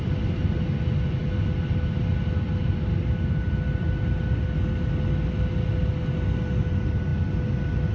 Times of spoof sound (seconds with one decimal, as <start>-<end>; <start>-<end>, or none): none